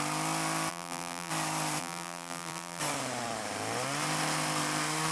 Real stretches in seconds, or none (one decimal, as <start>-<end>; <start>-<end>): 0.0-0.7; 1.3-1.8; 2.8-5.1